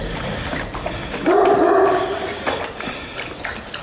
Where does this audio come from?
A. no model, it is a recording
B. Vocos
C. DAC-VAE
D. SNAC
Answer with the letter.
A